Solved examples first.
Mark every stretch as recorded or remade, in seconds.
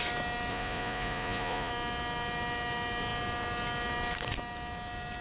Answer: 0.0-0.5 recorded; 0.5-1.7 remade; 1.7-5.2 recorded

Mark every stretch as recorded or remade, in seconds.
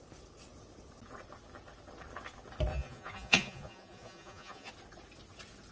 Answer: 0.0-2.7 recorded; 2.7-4.7 remade; 4.7-5.7 recorded